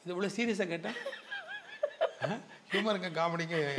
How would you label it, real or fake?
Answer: real